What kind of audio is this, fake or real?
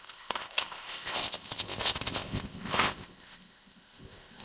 fake